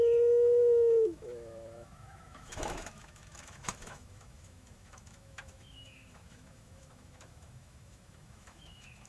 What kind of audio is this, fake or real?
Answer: fake